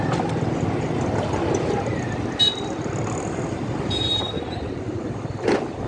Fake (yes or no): no